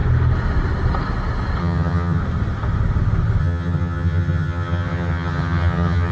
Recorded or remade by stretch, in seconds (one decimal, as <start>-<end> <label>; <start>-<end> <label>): 0.0-1.6 recorded; 1.6-2.2 remade; 2.2-3.4 recorded; 3.4-6.1 remade